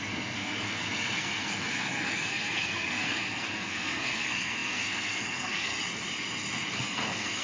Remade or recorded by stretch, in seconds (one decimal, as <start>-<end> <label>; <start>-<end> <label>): 0.0-5.7 remade; 5.7-6.7 recorded; 6.7-7.4 remade